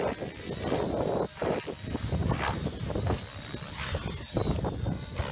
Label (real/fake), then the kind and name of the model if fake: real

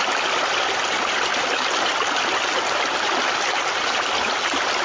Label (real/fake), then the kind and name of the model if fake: real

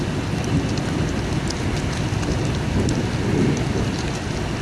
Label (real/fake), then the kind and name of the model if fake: real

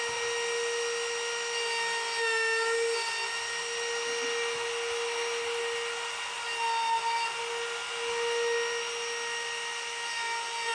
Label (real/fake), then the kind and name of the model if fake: real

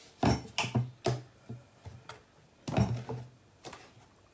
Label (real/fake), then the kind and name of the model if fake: real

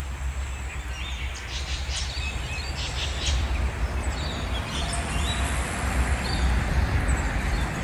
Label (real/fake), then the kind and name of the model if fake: real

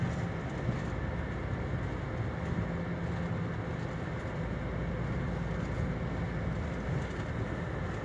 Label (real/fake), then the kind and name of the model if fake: real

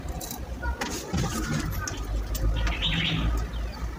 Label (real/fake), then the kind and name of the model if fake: real